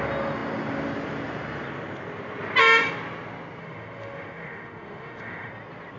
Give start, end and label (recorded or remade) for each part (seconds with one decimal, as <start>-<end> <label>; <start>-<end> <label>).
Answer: 0.0-3.6 recorded; 3.6-5.5 remade; 5.5-6.0 recorded